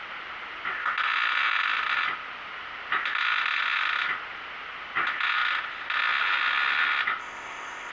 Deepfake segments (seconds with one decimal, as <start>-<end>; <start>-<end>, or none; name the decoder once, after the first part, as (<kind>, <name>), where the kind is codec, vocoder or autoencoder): 7.2-7.9 (codec, ZipCodec)